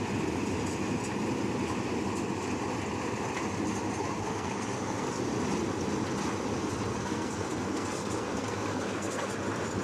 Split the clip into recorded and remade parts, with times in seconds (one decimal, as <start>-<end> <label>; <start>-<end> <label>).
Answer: 0.0-4.0 recorded; 4.0-5.2 remade; 5.2-6.9 recorded; 6.9-9.3 remade; 9.3-9.8 recorded